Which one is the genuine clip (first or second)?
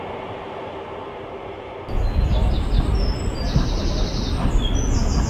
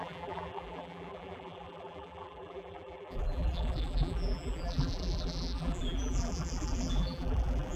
first